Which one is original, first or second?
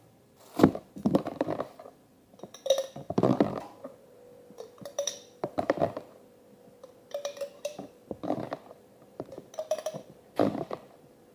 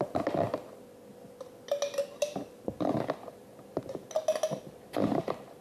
second